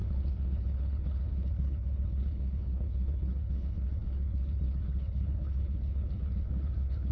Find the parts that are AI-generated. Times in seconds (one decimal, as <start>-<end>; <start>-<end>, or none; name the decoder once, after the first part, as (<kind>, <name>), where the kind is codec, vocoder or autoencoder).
0.0-7.1 (codec, HILCodec)